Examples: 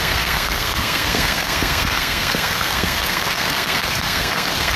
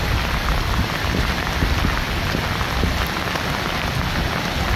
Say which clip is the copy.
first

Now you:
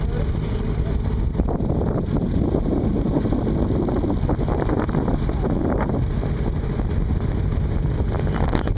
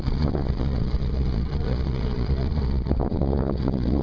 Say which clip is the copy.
second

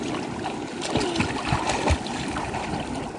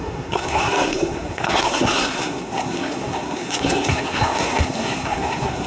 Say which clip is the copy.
second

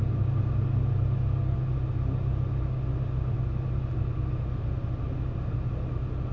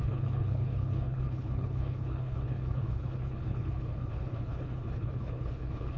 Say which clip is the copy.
second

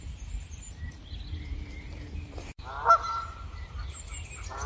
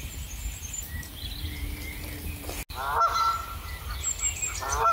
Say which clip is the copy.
first